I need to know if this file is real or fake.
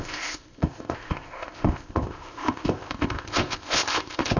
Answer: fake